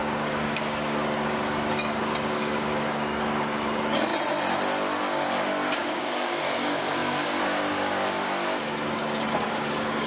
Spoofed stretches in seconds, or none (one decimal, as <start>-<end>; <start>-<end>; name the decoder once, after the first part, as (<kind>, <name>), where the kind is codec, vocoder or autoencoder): 0.0-4.1 (codec, DAC); 5.0-10.1